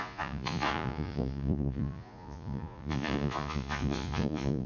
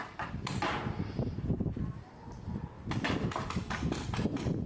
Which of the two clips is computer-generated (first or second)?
first